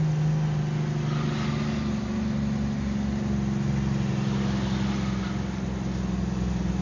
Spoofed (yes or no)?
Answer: no